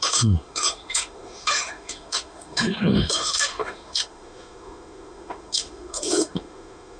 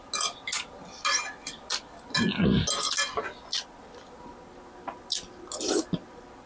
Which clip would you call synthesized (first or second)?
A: first